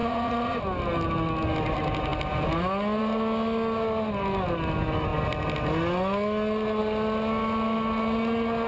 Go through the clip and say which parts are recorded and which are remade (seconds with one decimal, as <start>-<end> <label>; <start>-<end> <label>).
0.0-0.6 remade; 0.6-8.7 recorded